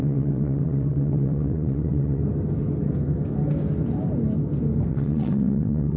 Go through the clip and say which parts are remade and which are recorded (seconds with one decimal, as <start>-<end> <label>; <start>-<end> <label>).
0.0-2.2 remade; 2.2-4.9 recorded; 4.9-6.0 remade